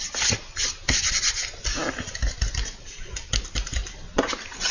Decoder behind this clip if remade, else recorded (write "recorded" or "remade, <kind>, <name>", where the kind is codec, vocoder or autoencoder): recorded